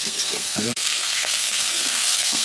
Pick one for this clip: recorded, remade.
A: remade